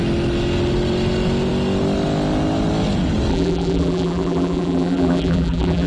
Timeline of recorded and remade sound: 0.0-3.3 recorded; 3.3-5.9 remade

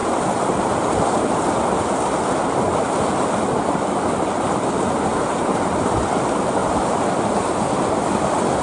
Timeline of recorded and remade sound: 0.0-5.1 recorded; 5.1-6.0 remade; 6.0-6.6 recorded; 6.6-7.6 remade; 7.6-8.6 recorded

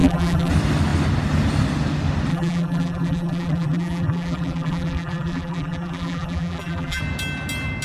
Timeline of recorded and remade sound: 0.0-0.5 remade; 0.5-2.3 recorded; 2.3-7.0 remade; 7.0-7.8 recorded

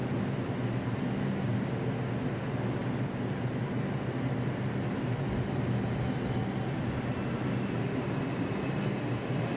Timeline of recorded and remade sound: 0.0-9.6 recorded

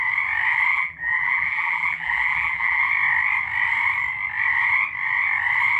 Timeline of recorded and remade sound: 0.0-0.7 recorded; 0.7-2.8 remade; 2.8-5.8 recorded